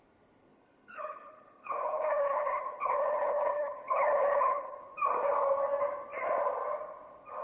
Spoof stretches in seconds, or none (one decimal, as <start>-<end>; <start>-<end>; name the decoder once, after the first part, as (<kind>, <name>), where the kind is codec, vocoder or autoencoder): 0.5-4.8 (codec, HILCodec)